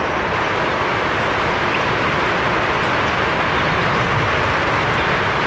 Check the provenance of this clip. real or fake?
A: real